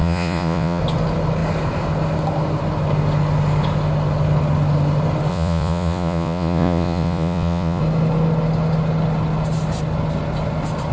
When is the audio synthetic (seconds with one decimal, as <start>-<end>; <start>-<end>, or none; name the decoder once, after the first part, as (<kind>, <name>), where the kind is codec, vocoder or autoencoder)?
0.0-0.8 (vocoder, Vocos); 5.3-7.8